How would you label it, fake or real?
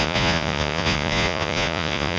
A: fake